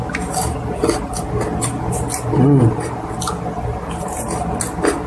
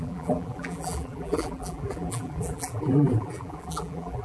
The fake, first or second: second